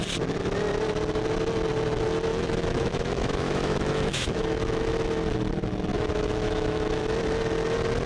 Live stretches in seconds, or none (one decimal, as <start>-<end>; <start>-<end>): 0.0-2.3; 4.9-5.9; 7.0-8.1